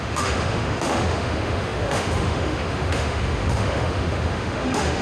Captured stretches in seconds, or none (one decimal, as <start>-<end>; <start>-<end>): none